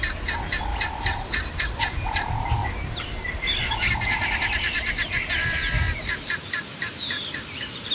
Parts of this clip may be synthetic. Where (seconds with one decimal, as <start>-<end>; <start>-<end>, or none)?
0.7-1.8